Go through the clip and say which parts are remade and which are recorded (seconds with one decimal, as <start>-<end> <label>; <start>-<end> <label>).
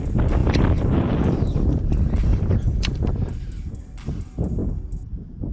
0.0-0.4 recorded; 0.4-2.7 remade; 2.7-5.5 recorded